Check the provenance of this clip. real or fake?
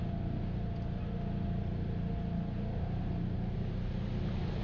real